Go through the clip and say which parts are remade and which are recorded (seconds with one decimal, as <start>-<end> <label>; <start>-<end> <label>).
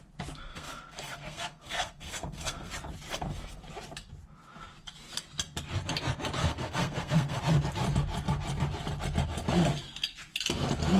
0.0-0.5 recorded; 0.5-2.7 remade; 2.7-3.1 recorded; 3.1-3.6 remade; 3.6-6.4 recorded; 6.4-7.4 remade; 7.4-11.0 recorded